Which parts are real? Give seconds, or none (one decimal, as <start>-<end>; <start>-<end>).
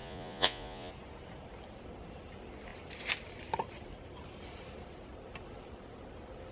0.9-6.5